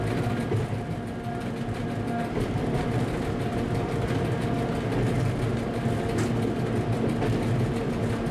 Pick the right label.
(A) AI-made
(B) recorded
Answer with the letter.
B